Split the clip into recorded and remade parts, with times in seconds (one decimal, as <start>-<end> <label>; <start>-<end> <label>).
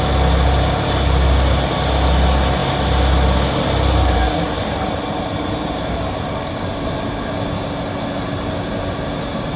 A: 0.0-9.6 recorded